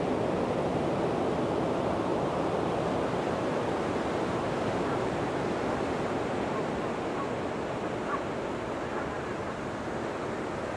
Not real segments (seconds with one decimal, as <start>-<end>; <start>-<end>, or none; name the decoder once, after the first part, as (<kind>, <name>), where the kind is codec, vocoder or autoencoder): 2.1-3.6 (vocoder, BigVGAN v2)